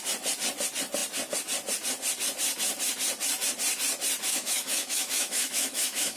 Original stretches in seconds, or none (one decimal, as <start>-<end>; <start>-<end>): 0.0-4.3